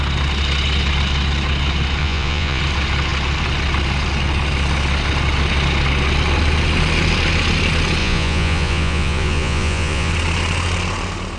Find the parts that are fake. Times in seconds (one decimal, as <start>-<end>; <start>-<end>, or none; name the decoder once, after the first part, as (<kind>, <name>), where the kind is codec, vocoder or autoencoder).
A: 2.0-2.6 (vocoder, Vocos); 8.0-10.1